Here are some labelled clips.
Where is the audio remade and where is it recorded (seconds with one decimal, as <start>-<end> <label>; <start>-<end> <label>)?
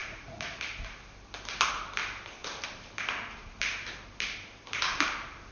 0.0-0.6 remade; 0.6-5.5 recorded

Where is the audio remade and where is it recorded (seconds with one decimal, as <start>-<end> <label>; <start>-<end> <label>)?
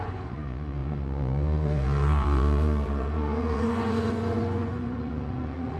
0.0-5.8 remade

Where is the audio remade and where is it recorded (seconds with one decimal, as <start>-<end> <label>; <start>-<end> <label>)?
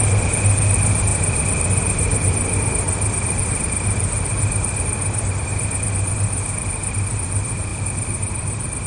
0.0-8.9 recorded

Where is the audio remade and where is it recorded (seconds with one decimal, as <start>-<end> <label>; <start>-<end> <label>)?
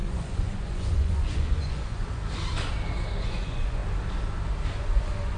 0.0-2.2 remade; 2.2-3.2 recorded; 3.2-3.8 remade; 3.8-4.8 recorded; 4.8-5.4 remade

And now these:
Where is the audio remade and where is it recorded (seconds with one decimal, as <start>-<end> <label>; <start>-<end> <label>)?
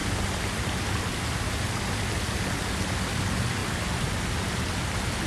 0.0-5.3 recorded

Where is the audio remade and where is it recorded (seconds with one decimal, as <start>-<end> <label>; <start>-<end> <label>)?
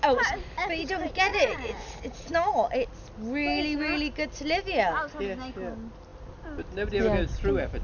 0.0-1.3 recorded; 1.3-2.5 remade; 2.5-7.8 recorded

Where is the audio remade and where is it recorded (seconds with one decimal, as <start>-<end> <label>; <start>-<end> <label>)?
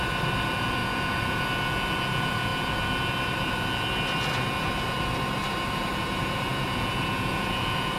0.0-0.8 recorded; 0.8-1.4 remade; 1.4-6.5 recorded; 6.5-8.0 remade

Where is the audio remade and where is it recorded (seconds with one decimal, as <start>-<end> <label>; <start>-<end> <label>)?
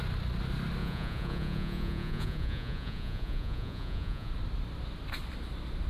0.0-0.8 recorded; 0.8-4.3 remade; 4.3-5.9 recorded